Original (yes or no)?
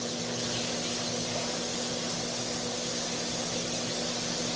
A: yes